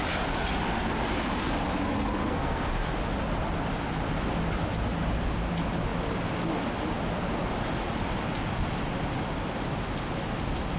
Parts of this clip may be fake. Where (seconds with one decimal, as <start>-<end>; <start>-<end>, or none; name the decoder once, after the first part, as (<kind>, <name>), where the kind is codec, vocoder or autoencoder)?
2.2-2.7 (codec, SNAC)